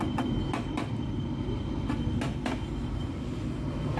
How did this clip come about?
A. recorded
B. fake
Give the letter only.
A